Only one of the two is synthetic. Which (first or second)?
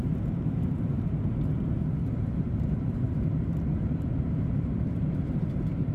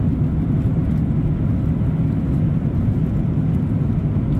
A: first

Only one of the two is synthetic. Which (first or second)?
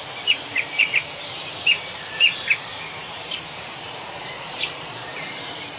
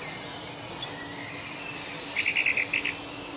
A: first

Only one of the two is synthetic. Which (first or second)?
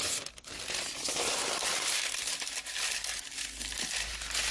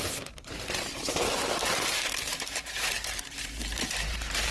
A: second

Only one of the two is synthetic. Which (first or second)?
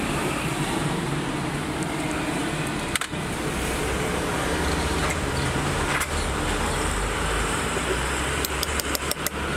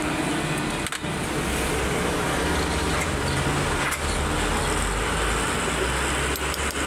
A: first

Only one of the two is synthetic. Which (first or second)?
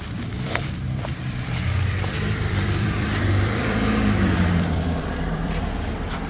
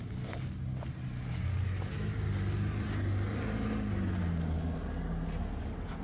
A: first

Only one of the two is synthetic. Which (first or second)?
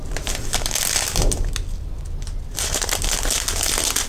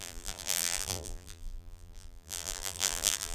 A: second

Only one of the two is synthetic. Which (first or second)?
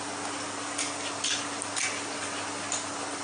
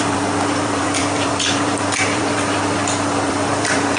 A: second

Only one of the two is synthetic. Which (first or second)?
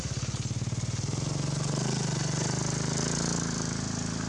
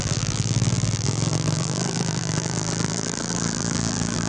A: second